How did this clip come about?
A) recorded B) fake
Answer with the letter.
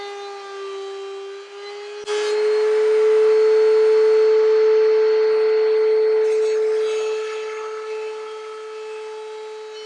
A